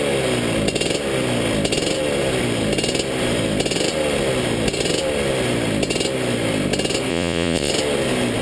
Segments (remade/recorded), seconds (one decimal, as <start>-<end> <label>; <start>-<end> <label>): 0.0-7.1 recorded; 7.1-7.7 remade; 7.7-8.4 recorded